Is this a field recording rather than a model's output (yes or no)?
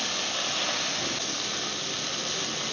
yes